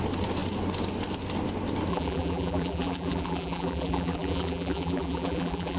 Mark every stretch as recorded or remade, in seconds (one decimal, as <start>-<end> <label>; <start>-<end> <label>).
0.0-1.9 recorded; 1.9-5.8 remade